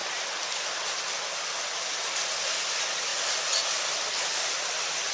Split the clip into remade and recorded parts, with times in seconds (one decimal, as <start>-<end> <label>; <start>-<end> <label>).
0.0-5.1 recorded